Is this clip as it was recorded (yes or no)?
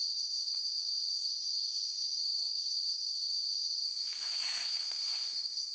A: no